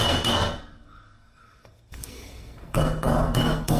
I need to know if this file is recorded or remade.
remade